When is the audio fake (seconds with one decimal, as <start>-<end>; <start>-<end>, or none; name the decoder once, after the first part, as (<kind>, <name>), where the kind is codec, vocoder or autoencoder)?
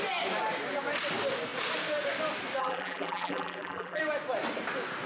2.6-4.0 (vocoder, BigVGAN v2)